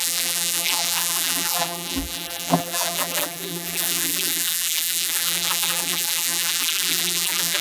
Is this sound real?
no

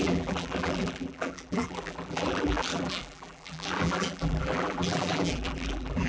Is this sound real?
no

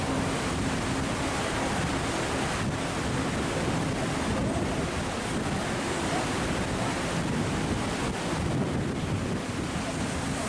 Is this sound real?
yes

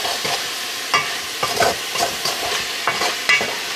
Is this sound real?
yes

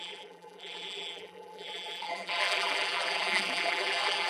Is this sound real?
no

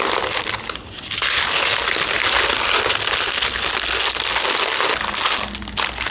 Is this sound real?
yes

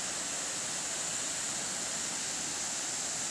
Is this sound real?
yes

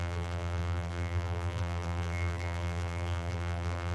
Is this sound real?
no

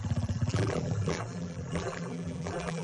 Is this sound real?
no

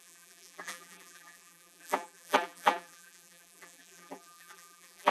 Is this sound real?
no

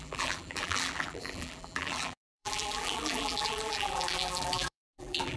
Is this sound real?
no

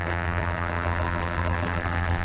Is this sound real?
no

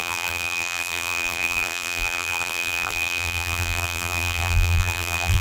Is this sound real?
no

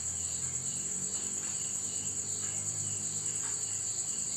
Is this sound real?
no